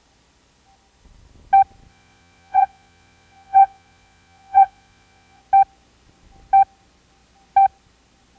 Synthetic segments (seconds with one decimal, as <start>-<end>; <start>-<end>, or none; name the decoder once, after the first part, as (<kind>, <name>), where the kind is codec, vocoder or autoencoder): 1.9-5.4 (vocoder, Vocos)